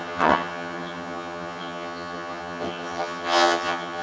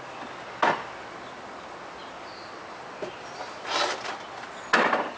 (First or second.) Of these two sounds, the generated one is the first